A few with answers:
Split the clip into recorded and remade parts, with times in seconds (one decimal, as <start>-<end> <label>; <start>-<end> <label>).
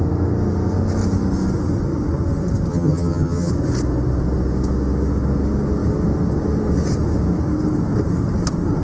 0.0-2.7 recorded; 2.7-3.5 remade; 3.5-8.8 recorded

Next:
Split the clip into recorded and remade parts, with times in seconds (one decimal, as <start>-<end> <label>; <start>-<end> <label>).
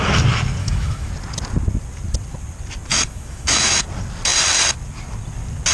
0.0-0.6 recorded; 0.6-1.1 remade; 1.1-2.9 recorded; 2.9-3.8 remade; 3.8-5.7 recorded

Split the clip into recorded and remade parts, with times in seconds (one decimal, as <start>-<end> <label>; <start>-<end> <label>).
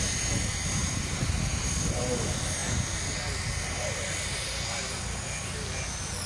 0.0-0.8 recorded; 0.8-2.0 remade; 2.0-6.3 recorded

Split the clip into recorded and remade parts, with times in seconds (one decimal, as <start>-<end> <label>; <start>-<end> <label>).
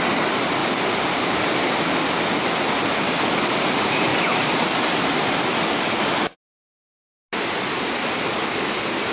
0.0-0.6 recorded; 0.6-1.7 remade; 1.7-9.1 recorded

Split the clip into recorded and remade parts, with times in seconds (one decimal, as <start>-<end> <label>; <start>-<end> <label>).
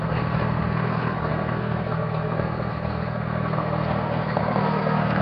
0.0-5.2 remade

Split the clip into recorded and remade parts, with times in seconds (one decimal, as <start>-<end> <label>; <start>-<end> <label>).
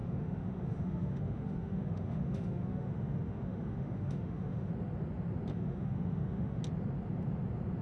0.0-4.7 remade; 4.7-5.5 recorded; 5.5-6.6 remade; 6.6-7.8 recorded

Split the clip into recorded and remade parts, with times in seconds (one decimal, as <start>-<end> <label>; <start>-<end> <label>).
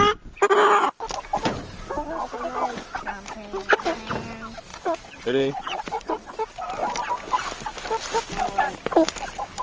0.0-4.7 recorded; 4.7-6.1 remade; 6.1-9.6 recorded